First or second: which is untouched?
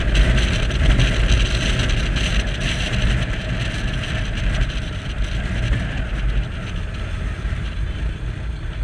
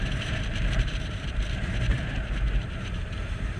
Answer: first